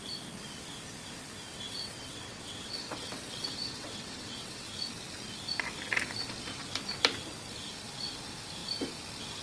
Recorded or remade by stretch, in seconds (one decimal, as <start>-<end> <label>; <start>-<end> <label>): 0.0-1.5 recorded; 1.5-4.7 remade; 4.7-9.4 recorded